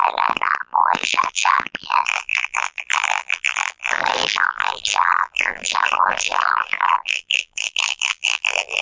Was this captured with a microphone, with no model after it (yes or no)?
no